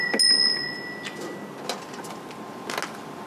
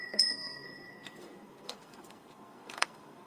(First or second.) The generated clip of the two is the second